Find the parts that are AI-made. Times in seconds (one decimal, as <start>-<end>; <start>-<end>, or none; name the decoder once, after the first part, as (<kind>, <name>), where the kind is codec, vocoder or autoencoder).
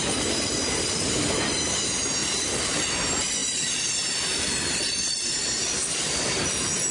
2.2-2.9 (vocoder, BigVGAN v2)